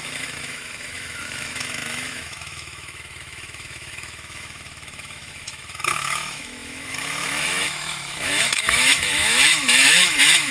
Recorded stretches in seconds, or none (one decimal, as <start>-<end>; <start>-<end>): none